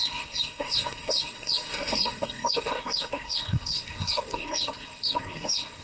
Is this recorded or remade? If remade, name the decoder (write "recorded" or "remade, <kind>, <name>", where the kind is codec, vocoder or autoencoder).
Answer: remade, codec, SNAC